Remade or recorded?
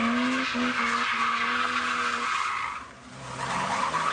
recorded